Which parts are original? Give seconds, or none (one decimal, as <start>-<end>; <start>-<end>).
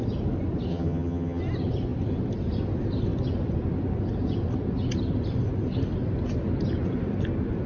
0.0-0.7; 1.4-7.7